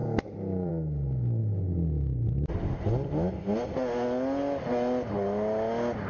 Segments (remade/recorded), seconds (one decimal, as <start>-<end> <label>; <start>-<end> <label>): 0.0-0.7 remade; 0.7-6.1 recorded